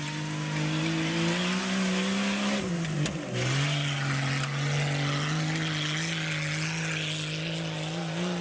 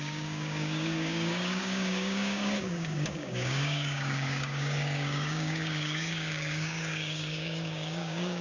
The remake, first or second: second